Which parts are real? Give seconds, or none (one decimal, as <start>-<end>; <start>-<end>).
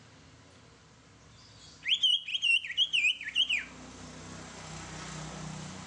0.0-5.9